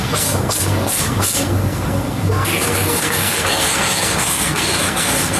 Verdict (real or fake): fake